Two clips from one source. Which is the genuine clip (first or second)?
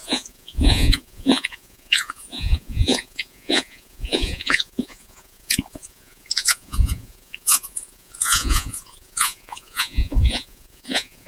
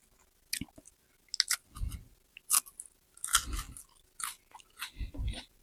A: second